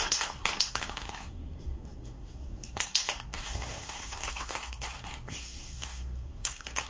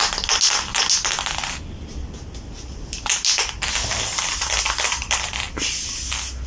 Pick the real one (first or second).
second